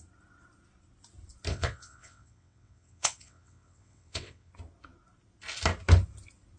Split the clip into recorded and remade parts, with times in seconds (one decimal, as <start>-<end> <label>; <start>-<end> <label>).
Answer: 0.0-1.5 recorded; 1.5-4.5 remade; 4.5-6.6 recorded